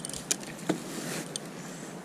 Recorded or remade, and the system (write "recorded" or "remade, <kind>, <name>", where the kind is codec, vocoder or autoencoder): recorded